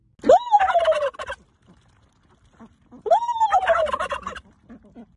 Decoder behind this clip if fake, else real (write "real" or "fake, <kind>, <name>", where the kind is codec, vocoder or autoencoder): real